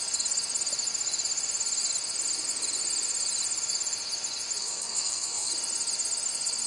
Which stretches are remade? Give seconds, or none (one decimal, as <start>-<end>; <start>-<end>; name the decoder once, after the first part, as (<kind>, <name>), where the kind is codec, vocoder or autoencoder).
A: 4.6-5.5 (codec, SNAC)